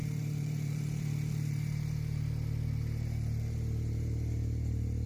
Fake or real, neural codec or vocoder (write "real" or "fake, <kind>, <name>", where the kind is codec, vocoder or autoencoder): fake, vocoder, BigVGAN v2